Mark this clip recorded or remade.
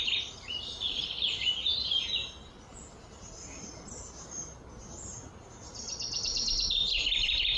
recorded